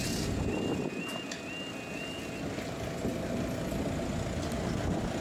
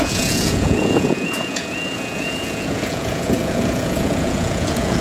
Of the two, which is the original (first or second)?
first